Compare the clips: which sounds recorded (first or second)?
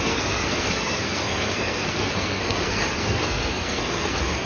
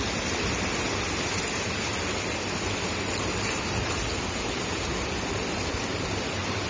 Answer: second